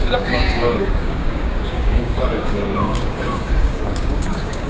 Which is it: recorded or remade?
remade